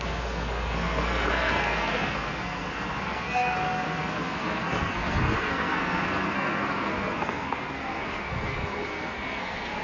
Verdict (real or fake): fake